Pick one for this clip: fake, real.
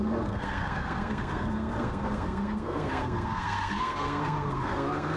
fake